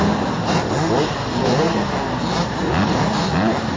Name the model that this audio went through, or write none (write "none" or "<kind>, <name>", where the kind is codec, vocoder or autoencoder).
none